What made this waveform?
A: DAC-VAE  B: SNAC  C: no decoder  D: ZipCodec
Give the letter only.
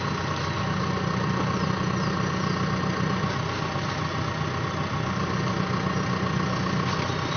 C